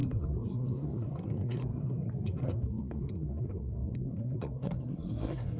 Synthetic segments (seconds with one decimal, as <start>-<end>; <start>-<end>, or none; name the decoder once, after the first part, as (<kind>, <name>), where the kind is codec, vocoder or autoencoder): 0.0-5.6 (codec, SNAC)